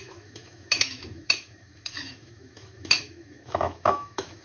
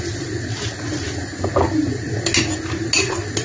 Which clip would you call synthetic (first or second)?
first